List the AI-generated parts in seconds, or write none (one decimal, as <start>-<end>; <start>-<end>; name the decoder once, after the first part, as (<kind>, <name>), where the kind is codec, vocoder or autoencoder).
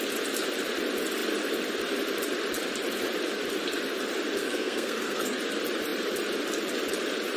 4.4-5.4 (codec, SNAC)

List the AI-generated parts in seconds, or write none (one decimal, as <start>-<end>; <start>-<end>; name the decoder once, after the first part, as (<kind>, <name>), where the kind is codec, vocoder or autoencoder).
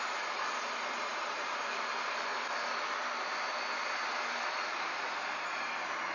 0.0-2.3 (vocoder, BigVGAN v2)